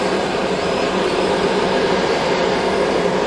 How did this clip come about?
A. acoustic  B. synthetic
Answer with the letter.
A